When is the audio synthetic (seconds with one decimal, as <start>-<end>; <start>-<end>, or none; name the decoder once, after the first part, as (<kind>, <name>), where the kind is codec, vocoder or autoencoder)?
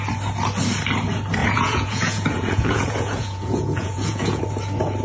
1.4-4.4 (vocoder, Vocos)